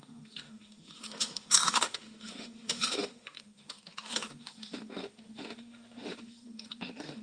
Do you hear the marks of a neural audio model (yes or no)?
yes